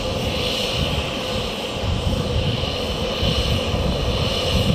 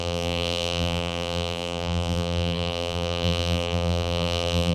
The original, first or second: first